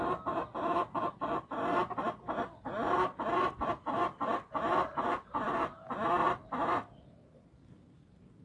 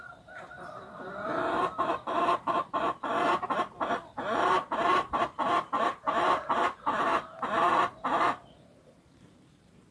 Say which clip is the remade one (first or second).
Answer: second